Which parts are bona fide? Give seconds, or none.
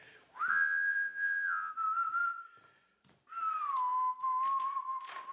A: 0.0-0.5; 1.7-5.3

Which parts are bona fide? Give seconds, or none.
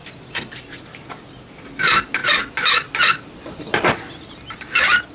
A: 0.0-5.1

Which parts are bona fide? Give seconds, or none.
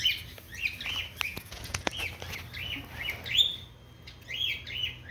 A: 0.0-1.3; 1.9-5.1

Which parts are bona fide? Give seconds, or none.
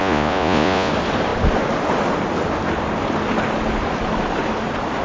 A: 0.9-5.0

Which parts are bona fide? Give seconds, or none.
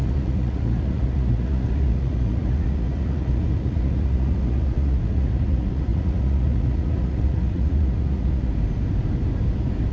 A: 8.5-9.9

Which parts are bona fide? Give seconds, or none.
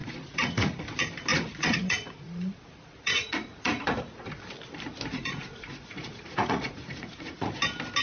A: 0.8-1.3; 4.2-5.1; 7.5-8.0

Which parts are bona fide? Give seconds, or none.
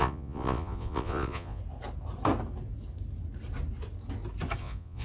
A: 1.6-4.6